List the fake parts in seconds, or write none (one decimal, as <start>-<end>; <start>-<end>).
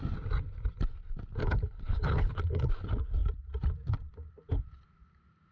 1.4-2.7